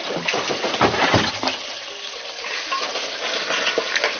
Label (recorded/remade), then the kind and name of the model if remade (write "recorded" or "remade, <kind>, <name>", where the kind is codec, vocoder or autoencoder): recorded